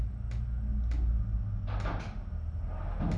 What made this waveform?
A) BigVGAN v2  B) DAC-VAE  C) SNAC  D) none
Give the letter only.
D